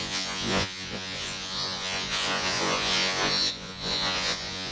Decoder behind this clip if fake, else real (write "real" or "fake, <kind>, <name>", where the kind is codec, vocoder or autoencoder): fake, vocoder, Vocos